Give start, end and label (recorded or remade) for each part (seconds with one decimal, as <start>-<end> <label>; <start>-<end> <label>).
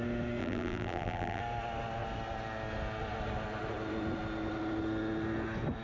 0.0-0.4 recorded; 0.4-1.4 remade; 1.4-5.8 recorded